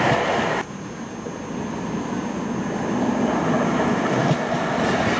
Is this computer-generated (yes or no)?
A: no